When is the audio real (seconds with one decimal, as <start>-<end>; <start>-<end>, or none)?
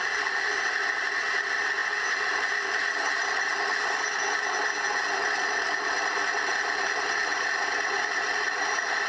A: 0.0-9.1